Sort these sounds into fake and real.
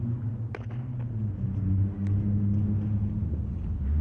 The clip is real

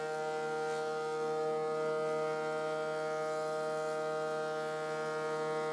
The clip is real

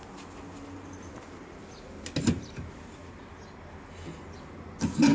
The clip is real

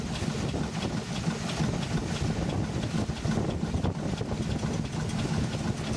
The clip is real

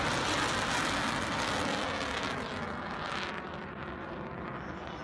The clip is real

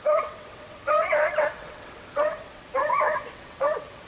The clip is fake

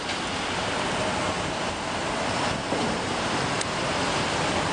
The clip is real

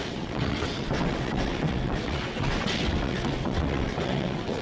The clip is fake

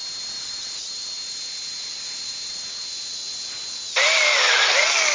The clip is real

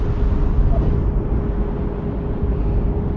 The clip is real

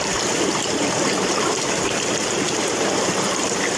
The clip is fake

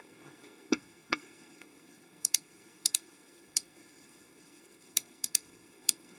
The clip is fake